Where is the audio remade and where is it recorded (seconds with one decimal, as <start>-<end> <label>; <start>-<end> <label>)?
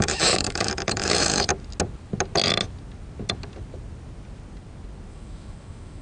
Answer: 0.0-1.5 remade; 1.5-5.1 recorded; 5.1-6.0 remade